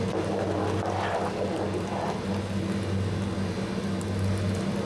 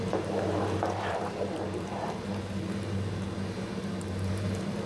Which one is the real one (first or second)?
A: first